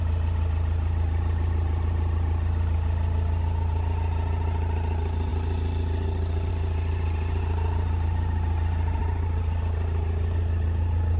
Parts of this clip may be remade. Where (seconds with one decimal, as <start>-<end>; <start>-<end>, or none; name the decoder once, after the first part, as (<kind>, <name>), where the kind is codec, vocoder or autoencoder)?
none